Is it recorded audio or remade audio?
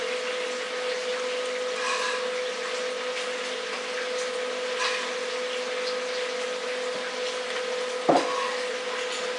recorded